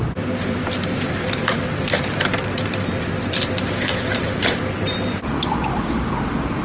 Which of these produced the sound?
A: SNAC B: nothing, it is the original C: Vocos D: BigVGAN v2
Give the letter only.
D